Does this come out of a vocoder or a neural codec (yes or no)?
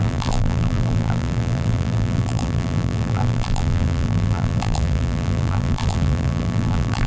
yes